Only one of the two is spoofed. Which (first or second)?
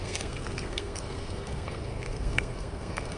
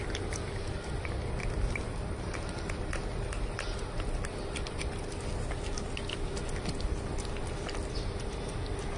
first